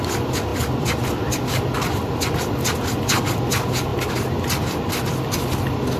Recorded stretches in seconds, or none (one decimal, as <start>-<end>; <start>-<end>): 0.0-6.0